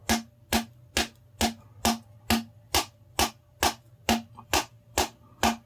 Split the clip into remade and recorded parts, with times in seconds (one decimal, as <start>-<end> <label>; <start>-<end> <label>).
0.0-5.7 recorded